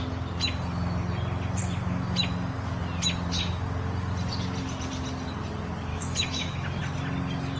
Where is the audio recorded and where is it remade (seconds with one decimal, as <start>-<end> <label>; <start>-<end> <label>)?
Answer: 0.0-5.9 recorded; 5.9-6.8 remade; 6.8-7.6 recorded